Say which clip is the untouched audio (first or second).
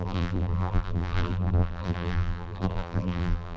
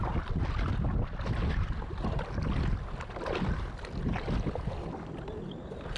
second